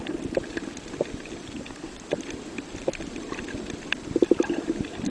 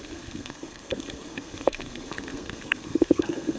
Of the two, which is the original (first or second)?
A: first